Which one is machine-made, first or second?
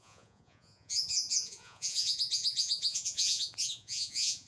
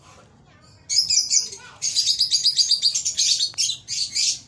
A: first